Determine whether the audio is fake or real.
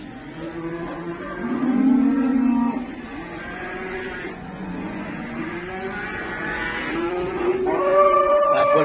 fake